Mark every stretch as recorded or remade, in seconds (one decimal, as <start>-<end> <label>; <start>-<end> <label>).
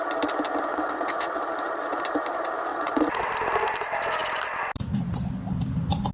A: 0.0-0.7 recorded; 0.7-1.4 remade; 1.4-2.7 recorded; 2.7-3.3 remade; 3.3-6.1 recorded